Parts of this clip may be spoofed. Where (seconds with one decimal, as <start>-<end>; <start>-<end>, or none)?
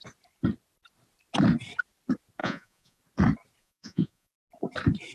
2.4-3.0; 3.6-4.3